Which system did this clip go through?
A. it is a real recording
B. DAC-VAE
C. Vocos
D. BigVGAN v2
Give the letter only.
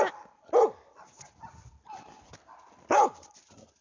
A